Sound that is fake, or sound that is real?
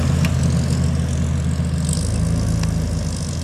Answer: real